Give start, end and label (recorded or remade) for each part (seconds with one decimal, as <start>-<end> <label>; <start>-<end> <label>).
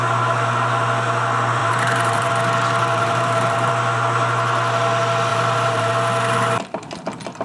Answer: 0.0-1.6 recorded; 1.6-2.3 remade; 2.3-2.9 recorded; 2.9-3.7 remade; 3.7-5.3 recorded; 5.3-5.9 remade; 5.9-7.4 recorded